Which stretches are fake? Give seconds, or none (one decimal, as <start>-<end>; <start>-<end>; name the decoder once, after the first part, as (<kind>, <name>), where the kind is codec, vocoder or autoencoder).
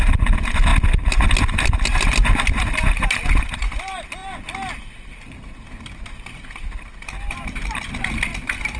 none